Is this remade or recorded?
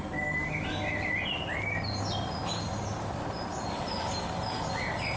recorded